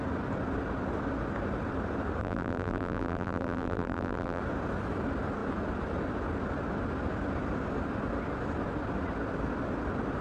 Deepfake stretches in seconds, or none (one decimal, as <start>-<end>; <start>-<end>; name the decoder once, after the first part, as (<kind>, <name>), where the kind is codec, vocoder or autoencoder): 2.2-4.4 (vocoder, BigVGAN v2)